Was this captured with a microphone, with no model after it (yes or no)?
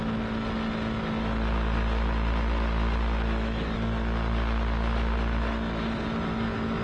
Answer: yes